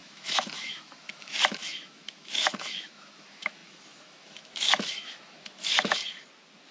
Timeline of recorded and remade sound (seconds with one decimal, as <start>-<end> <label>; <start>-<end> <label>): 0.0-6.0 remade; 6.0-6.7 recorded